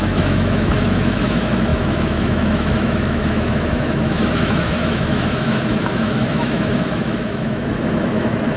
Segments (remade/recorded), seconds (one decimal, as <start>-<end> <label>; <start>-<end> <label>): 0.0-8.6 remade